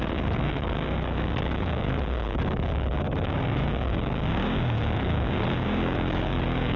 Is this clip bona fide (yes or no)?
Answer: no